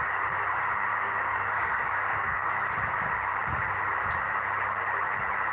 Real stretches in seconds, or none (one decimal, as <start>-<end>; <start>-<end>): 0.0-0.9; 2.5-5.5